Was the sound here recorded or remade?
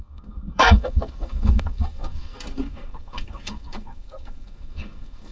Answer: remade